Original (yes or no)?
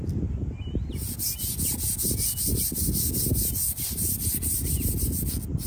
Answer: yes